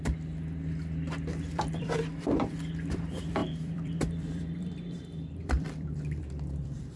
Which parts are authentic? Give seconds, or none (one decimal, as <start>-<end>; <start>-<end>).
none